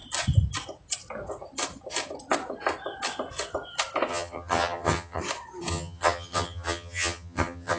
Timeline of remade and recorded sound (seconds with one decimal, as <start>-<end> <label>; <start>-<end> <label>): 0.0-4.1 recorded; 4.1-5.2 remade; 5.2-5.7 recorded; 5.7-7.8 remade